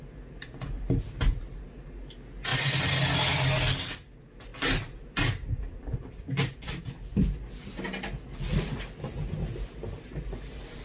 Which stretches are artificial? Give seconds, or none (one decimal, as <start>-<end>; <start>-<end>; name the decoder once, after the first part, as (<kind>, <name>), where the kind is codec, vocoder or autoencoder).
none